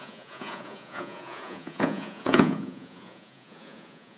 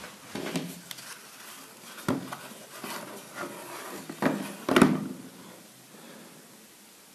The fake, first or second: first